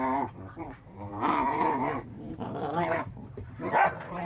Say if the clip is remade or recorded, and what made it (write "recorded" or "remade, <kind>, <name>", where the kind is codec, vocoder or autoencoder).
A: remade, vocoder, BigVGAN v2